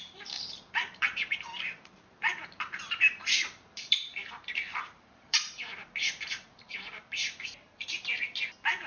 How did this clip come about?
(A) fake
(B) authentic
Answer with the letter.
A